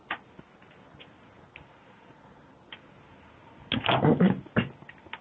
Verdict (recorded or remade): recorded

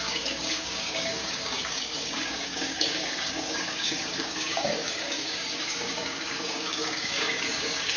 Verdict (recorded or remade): remade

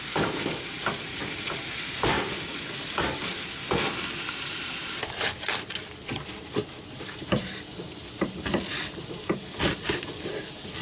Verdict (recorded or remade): remade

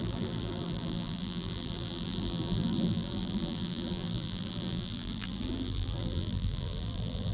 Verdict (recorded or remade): remade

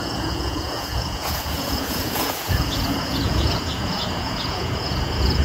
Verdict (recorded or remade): remade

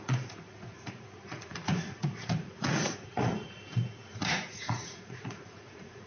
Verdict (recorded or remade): remade